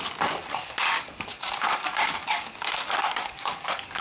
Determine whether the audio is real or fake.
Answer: fake